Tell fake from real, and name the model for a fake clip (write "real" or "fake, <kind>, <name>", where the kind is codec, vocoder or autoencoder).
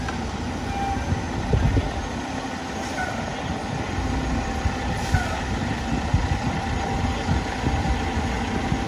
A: real